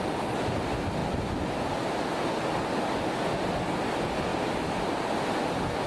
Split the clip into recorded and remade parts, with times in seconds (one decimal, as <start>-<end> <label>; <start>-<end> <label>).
0.0-5.9 recorded